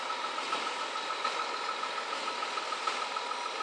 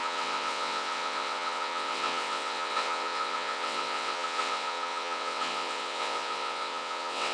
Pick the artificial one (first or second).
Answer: second